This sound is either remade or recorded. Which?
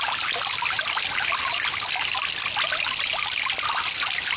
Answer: recorded